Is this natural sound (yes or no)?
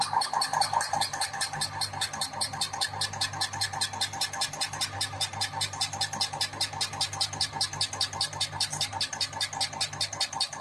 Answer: yes